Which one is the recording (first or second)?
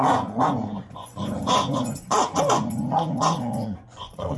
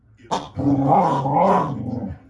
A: second